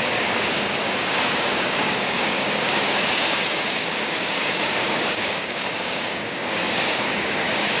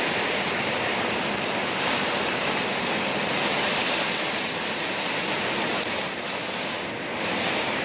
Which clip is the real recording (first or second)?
second